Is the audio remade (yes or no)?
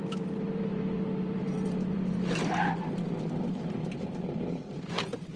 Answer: yes